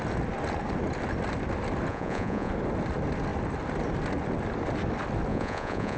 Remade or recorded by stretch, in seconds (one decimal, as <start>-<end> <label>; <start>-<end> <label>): 0.0-1.9 recorded; 1.9-2.5 remade; 2.5-5.3 recorded; 5.3-6.0 remade